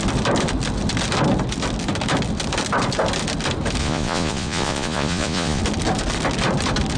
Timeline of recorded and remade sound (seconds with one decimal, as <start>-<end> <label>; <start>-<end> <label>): 0.0-3.8 recorded; 3.8-5.6 remade; 5.6-7.0 recorded